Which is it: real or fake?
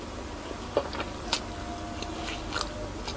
real